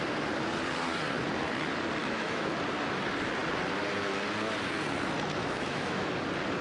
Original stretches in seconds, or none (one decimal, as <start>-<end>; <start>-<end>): 0.0-2.0; 2.5-5.4; 6.1-6.6